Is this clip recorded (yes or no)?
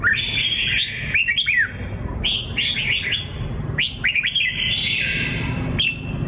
yes